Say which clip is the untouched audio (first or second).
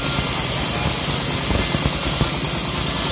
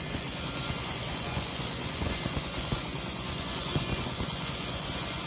first